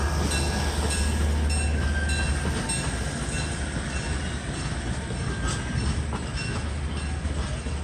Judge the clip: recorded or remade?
recorded